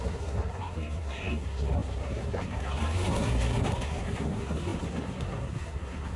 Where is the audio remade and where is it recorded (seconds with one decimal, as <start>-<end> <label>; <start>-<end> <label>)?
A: 0.0-6.2 remade